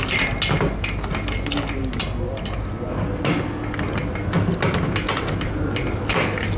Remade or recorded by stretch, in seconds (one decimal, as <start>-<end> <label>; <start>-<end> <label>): 0.0-6.6 recorded